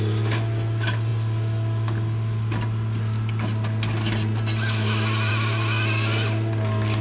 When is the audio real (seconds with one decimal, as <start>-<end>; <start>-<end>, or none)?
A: 0.0-7.0